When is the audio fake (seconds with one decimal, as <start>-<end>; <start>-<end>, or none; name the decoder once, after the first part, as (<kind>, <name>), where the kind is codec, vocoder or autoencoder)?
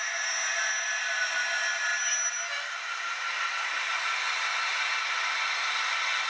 none